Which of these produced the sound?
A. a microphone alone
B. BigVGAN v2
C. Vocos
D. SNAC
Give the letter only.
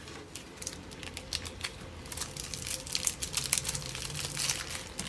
A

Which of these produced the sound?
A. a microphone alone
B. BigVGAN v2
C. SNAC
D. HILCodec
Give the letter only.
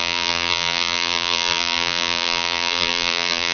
B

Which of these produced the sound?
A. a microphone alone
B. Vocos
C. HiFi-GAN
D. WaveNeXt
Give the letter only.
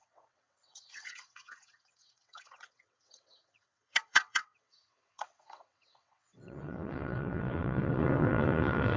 D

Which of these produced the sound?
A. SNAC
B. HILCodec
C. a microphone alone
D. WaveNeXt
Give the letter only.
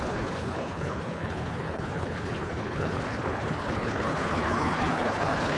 B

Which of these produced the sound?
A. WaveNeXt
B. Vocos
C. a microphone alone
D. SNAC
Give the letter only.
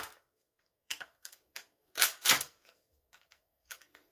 D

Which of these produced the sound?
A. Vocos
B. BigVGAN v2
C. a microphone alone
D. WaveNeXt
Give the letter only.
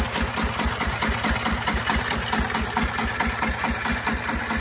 C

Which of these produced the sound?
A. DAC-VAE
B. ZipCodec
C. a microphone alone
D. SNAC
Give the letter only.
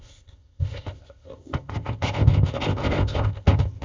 B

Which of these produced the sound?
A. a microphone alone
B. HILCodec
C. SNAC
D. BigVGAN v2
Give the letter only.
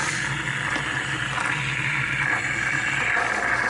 A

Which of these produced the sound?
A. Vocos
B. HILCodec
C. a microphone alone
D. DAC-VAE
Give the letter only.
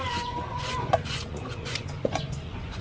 A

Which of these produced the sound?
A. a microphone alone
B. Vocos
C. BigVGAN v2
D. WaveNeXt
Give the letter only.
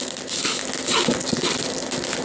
C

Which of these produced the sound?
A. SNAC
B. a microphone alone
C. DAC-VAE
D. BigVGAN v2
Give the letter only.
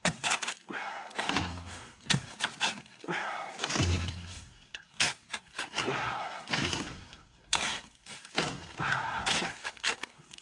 A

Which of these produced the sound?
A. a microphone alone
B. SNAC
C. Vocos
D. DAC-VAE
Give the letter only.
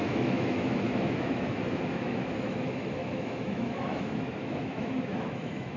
D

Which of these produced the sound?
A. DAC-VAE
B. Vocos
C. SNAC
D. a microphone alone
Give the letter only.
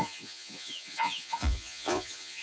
B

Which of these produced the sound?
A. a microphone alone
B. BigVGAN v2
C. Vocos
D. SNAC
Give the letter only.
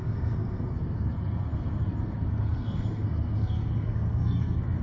D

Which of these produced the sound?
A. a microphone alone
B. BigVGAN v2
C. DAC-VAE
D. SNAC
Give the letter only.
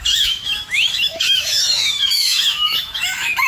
C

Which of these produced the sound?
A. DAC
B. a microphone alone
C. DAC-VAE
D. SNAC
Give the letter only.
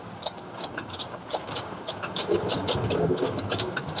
A